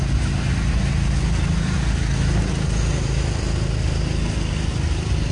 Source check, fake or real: real